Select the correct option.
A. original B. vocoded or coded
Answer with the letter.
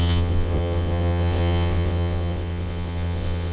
B